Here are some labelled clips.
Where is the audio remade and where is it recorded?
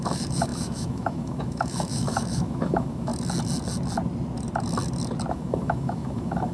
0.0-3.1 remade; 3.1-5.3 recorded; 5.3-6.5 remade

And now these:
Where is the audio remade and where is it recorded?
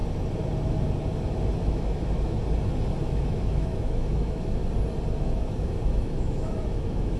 0.0-1.6 recorded; 1.6-2.4 remade; 2.4-3.0 recorded; 3.0-4.6 remade; 4.6-5.2 recorded; 5.2-7.2 remade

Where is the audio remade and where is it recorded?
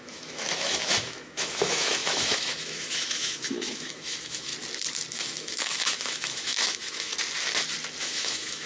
0.0-4.5 remade; 4.5-5.1 recorded; 5.1-7.1 remade; 7.1-8.0 recorded; 8.0-8.7 remade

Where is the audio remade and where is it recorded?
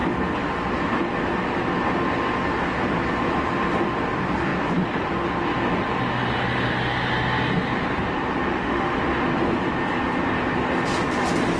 0.0-8.5 recorded; 8.5-9.0 remade; 9.0-11.6 recorded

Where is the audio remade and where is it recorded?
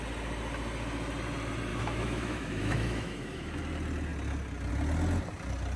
0.0-1.7 recorded; 1.7-3.6 remade; 3.6-5.8 recorded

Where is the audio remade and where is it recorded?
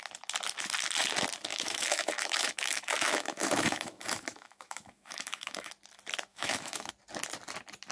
0.0-1.5 recorded; 1.5-5.7 remade; 5.7-6.3 recorded; 6.3-6.9 remade; 6.9-7.9 recorded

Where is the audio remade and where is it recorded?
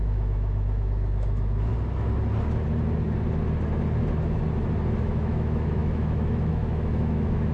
0.0-1.7 remade; 1.7-5.0 recorded; 5.0-7.5 remade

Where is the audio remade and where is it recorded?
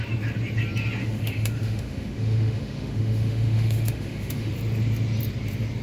0.0-1.0 recorded; 1.0-4.5 remade; 4.5-5.8 recorded